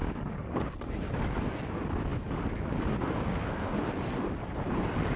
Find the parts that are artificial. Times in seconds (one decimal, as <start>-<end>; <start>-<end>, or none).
0.0-0.5